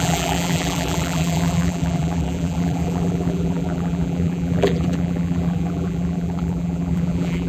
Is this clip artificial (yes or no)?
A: yes